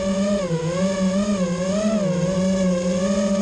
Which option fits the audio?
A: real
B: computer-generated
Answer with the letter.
A